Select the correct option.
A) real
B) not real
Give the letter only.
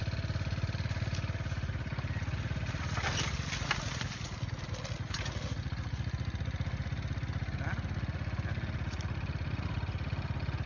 A